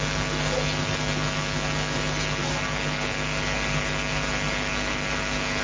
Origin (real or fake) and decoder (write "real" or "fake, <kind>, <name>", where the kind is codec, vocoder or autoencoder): real